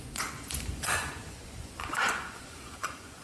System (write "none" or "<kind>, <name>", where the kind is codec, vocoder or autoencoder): vocoder, Vocos